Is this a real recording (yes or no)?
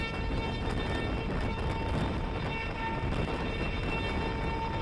yes